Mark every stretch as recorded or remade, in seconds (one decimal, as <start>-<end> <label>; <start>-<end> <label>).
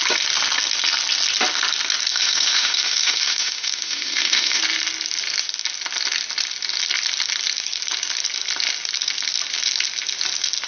0.0-2.1 recorded; 2.1-4.6 remade; 4.6-10.7 recorded